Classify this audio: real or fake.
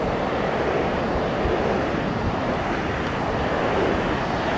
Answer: fake